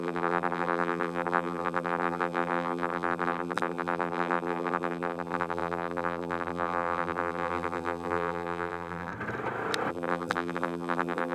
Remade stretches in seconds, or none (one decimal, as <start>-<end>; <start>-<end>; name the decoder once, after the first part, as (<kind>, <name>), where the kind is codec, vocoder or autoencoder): 0.0-9.1 (vocoder, BigVGAN v2); 9.9-11.3